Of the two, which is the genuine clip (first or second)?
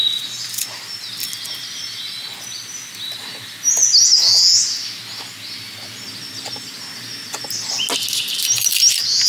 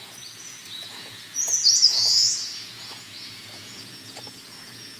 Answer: first